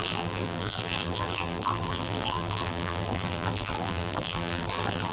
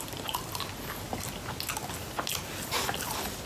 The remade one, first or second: first